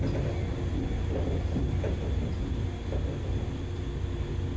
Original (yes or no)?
yes